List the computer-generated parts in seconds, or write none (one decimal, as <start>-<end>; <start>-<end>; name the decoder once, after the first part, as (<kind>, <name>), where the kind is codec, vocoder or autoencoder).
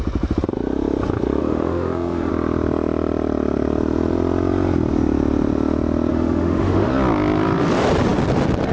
1.4-2.3 (autoencoder, DAC-VAE); 6.1-6.9